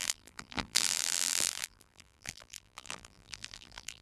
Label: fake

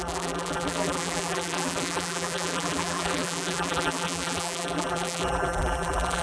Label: fake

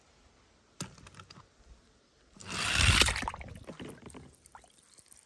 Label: real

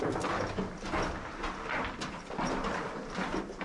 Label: fake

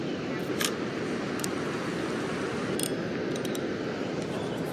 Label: real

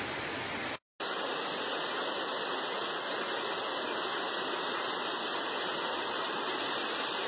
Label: real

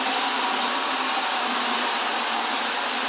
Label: real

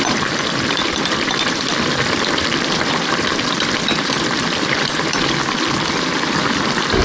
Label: fake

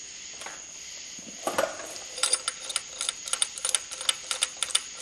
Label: real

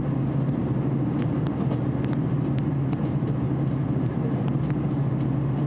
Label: real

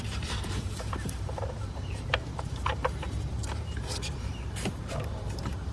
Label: fake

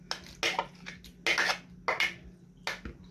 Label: real